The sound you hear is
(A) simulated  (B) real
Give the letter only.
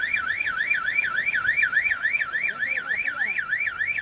B